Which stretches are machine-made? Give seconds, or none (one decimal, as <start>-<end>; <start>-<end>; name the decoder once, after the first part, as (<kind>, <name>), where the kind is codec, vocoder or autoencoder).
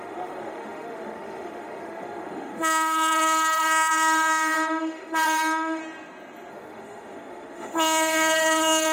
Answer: 0.0-5.8 (autoencoder, DAC-VAE); 6.5-8.9